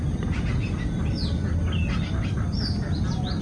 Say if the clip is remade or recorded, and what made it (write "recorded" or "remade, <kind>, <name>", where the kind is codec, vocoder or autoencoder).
recorded